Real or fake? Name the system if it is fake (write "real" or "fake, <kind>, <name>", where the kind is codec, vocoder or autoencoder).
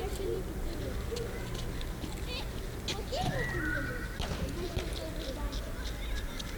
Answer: real